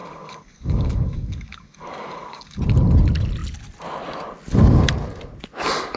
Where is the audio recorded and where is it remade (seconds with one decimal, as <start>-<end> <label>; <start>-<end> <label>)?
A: 0.0-2.6 remade; 2.6-6.0 recorded